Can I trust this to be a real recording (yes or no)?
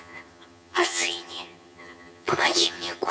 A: no